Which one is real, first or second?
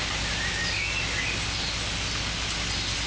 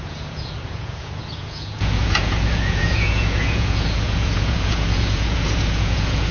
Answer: first